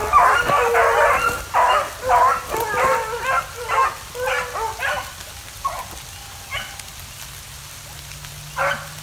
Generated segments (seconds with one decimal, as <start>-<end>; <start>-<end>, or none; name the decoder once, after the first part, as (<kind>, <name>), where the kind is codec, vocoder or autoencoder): none